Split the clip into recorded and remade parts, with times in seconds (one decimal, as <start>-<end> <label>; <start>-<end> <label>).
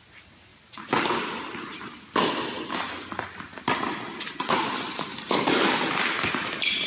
0.0-6.9 recorded